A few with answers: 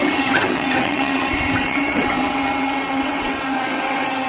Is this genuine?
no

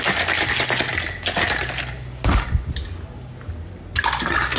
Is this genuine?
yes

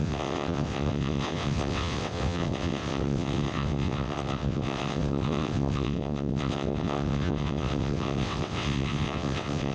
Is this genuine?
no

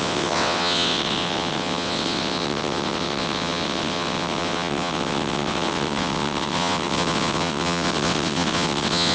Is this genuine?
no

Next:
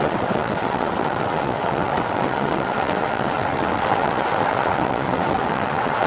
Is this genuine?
no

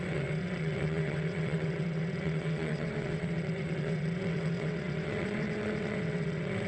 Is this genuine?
no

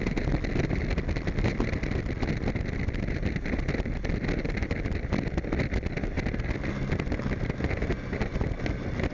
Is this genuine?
yes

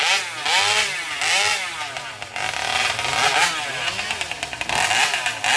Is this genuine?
yes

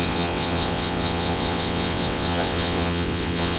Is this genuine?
no